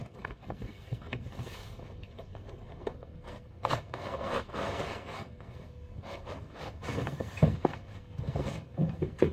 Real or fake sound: fake